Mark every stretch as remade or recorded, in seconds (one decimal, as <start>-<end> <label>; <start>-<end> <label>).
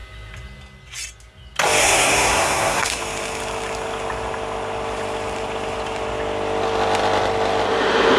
0.0-1.8 recorded; 1.8-3.0 remade; 3.0-8.2 recorded